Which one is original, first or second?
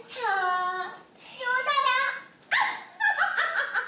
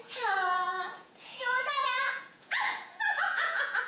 first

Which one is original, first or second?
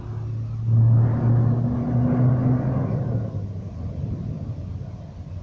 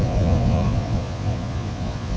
first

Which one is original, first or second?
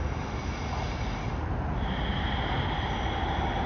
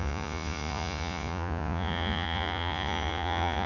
first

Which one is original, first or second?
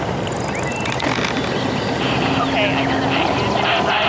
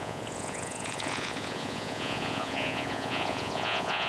first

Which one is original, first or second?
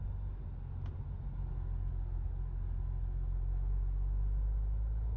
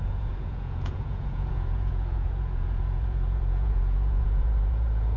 first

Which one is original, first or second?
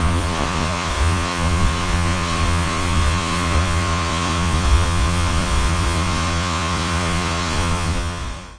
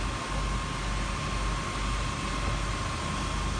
second